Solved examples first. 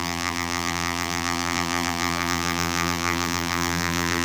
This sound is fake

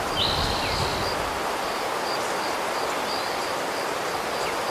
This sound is real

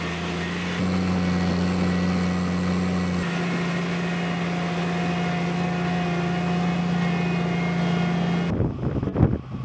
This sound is real